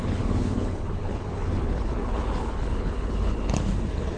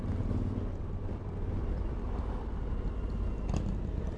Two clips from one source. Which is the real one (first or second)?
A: second